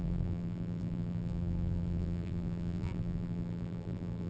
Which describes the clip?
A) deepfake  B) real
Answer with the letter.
A